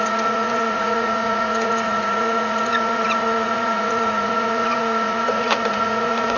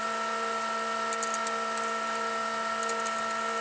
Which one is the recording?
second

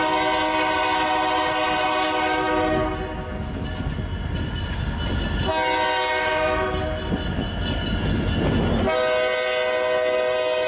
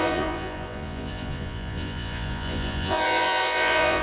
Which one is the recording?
first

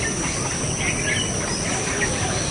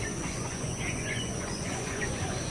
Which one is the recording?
first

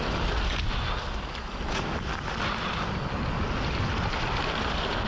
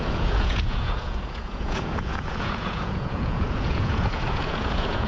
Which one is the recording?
first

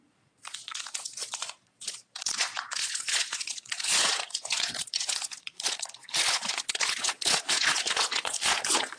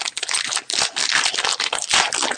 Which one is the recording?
second